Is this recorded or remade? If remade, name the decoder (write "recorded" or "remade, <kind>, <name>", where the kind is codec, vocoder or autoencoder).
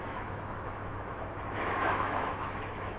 remade, autoencoder, DAC-VAE